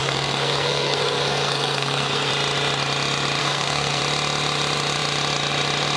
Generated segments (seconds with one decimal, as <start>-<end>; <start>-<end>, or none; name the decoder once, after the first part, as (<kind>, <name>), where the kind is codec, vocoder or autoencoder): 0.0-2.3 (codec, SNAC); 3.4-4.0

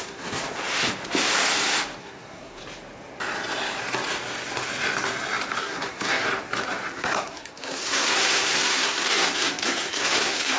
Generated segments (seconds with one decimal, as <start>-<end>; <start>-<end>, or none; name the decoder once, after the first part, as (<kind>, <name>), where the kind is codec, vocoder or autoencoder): 0.0-0.4 (codec, SNAC); 2.0-2.6; 5.6-6.3; 6.9-10.6

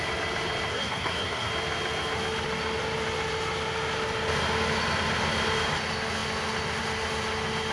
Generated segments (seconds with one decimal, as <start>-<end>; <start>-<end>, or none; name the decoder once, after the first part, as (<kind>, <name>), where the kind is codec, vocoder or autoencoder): 0.7-1.5 (codec, SNAC)

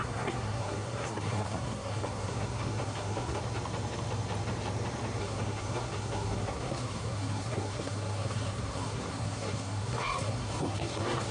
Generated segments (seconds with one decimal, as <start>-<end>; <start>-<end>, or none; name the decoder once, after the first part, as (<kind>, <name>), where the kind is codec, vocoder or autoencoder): 0.0-3.4 (codec, SNAC); 5.2-11.3

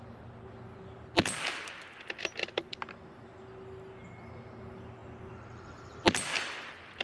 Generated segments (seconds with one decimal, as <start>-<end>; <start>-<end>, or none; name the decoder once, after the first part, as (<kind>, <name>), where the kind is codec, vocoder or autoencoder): none